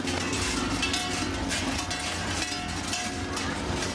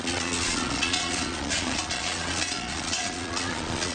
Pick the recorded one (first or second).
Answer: first